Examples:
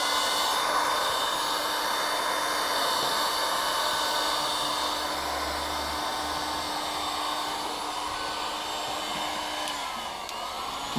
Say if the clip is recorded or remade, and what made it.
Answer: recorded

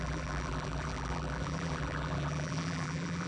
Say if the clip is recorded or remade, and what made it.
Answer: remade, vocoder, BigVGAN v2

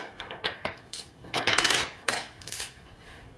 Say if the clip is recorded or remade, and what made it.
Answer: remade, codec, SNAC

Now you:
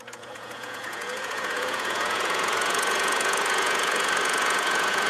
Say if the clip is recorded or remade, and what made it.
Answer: remade, vocoder, Vocos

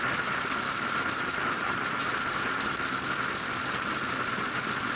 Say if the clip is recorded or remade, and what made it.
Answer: remade, vocoder, BigVGAN v2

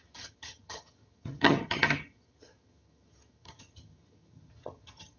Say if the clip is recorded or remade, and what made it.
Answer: remade, vocoder, HiFi-GAN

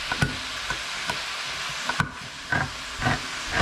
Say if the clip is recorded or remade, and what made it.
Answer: recorded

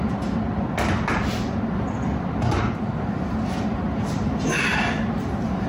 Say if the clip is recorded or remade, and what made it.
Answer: recorded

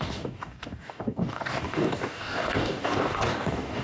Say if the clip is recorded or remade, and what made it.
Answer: remade, codec, DAC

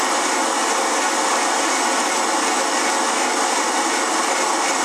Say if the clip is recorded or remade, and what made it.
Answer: recorded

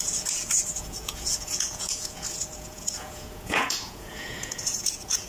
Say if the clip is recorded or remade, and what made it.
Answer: remade, vocoder, Vocos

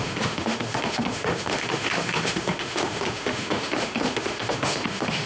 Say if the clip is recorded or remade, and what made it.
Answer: remade, autoencoder, DAC-VAE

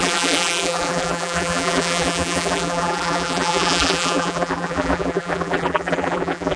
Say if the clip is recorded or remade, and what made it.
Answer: remade, vocoder, BigVGAN v2